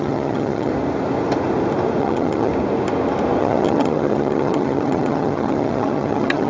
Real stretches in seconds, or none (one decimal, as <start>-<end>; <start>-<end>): 0.7-2.0; 2.5-3.4